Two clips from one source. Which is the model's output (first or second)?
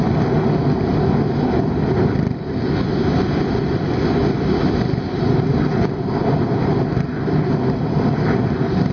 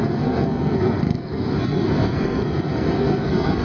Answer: second